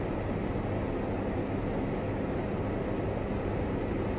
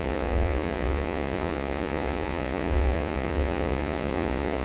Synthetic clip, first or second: second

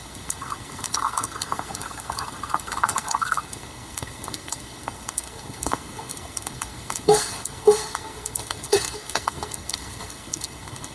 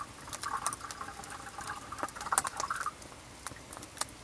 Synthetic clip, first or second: first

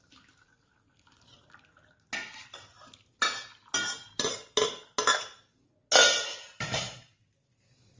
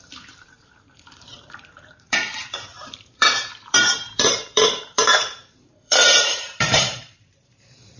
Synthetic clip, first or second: second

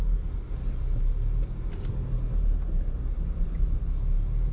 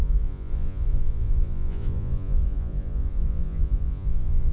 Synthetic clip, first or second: second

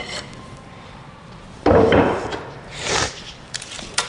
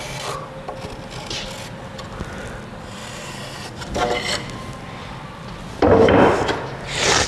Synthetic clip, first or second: first